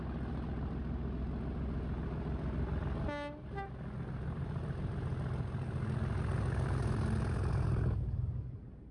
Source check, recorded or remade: recorded